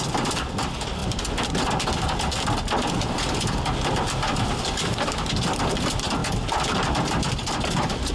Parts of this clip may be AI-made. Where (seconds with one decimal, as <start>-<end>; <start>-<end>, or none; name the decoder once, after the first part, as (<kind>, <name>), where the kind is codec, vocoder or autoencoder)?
none